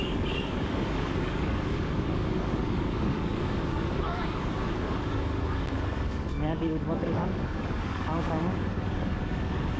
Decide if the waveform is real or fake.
fake